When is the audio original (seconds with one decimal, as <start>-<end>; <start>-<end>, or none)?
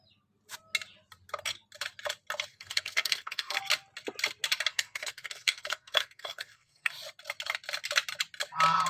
0.0-2.5; 3.6-4.7; 6.9-8.9